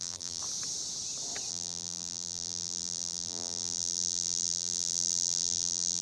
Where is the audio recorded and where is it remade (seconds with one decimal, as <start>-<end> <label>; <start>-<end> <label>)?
0.0-0.4 remade; 0.4-1.5 recorded; 1.5-6.0 remade